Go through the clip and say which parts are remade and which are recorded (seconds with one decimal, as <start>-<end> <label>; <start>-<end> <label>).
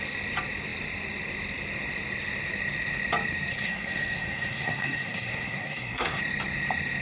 0.0-3.5 recorded; 3.5-6.2 remade; 6.2-7.0 recorded